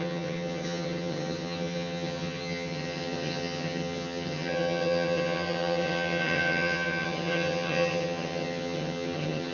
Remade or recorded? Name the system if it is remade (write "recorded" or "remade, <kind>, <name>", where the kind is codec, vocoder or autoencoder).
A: remade, vocoder, HiFi-GAN